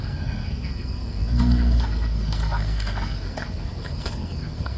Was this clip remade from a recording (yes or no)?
yes